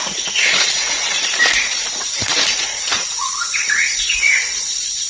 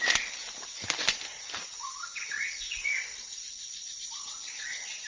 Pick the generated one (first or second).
first